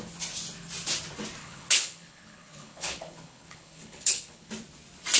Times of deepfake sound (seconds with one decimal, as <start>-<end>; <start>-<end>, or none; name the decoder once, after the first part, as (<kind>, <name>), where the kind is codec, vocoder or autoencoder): 1.4-4.5 (codec, HILCodec)